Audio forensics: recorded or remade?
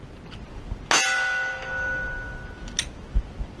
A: recorded